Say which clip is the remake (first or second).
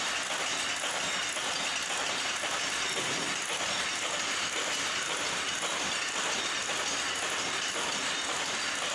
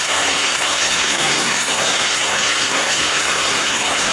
second